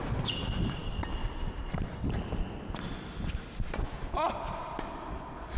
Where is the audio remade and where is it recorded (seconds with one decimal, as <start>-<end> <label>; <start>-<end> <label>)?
0.0-5.6 recorded

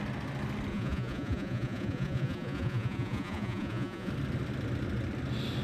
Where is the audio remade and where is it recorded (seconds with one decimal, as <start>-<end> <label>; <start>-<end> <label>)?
0.0-0.7 recorded; 0.7-4.1 remade; 4.1-5.6 recorded